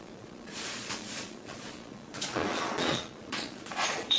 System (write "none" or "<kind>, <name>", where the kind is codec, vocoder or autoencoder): vocoder, Vocos